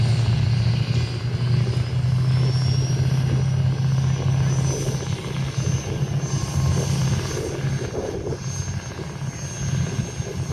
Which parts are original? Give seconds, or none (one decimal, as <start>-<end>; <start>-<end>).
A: 0.0-10.5